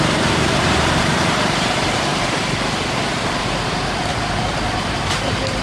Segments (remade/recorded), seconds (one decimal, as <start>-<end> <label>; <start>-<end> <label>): 0.0-2.1 remade; 2.1-3.3 recorded; 3.3-4.1 remade; 4.1-5.1 recorded; 5.1-5.6 remade